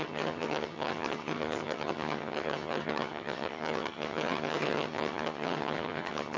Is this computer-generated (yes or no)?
yes